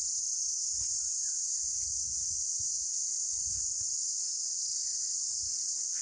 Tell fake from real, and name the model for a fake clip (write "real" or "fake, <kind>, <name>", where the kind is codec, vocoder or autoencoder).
fake, vocoder, BigVGAN v2